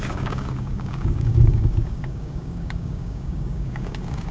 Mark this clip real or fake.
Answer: fake